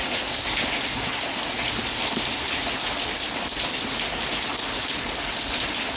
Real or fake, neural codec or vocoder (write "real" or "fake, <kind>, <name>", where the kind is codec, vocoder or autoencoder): real